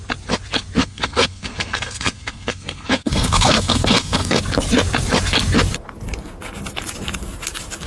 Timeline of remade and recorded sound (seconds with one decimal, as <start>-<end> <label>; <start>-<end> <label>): 0.0-0.8 recorded; 0.8-4.4 remade; 4.4-7.9 recorded